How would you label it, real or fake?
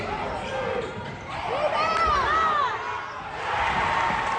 real